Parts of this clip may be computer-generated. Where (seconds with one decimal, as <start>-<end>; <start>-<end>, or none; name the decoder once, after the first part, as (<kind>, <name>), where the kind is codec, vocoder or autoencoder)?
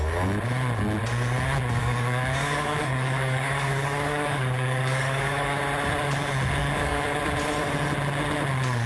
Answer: 1.8-5.6 (codec, DAC); 6.6-7.2